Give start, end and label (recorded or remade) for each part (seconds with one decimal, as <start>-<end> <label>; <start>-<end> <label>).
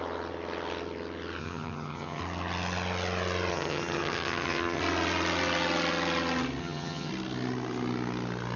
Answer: 0.0-1.4 recorded; 1.4-2.2 remade; 2.2-3.5 recorded; 3.5-4.8 remade; 4.8-6.6 recorded; 6.6-7.1 remade; 7.1-8.6 recorded